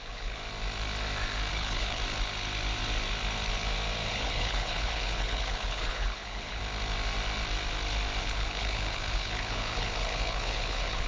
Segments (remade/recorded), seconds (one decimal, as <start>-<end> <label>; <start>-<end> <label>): 0.0-0.4 remade; 0.4-1.5 recorded; 1.5-2.0 remade; 2.0-4.1 recorded; 4.1-6.6 remade; 6.6-8.2 recorded; 8.2-11.1 remade